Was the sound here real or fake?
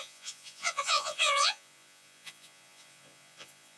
fake